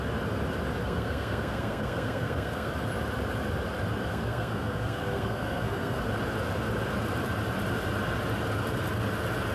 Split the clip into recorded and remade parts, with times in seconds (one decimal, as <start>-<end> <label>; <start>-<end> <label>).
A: 0.0-0.8 recorded; 0.8-2.7 remade; 2.7-4.1 recorded; 4.1-6.0 remade; 6.0-9.5 recorded